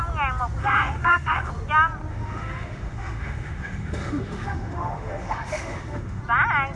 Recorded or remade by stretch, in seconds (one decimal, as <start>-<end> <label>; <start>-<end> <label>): 0.0-0.6 recorded; 0.6-1.5 remade; 1.5-2.1 recorded; 2.1-6.2 remade; 6.2-6.8 recorded